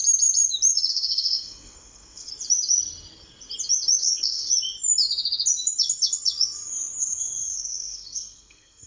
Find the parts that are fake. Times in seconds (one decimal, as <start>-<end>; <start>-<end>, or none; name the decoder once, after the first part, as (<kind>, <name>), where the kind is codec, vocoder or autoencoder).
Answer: 0.9-2.3 (codec, SNAC); 4.0-4.4; 7.0-8.9